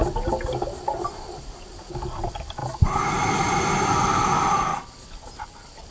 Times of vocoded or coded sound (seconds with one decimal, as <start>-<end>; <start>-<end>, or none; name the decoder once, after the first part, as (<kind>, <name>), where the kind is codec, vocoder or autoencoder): none